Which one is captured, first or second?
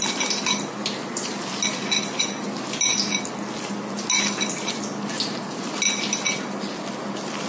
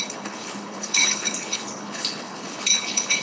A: first